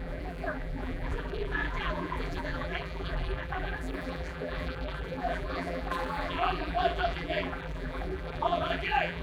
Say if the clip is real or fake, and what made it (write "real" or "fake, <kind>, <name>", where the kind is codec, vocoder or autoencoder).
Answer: fake, vocoder, BigVGAN v2